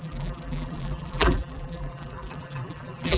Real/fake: fake